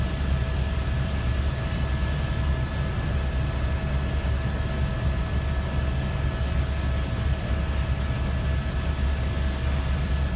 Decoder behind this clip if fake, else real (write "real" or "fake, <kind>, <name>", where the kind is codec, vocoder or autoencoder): real